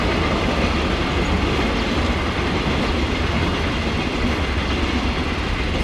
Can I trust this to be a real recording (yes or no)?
yes